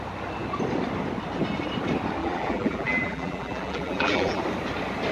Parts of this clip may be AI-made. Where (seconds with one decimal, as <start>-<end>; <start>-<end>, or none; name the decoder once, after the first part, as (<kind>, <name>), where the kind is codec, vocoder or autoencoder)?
2.2-4.4 (vocoder, BigVGAN v2)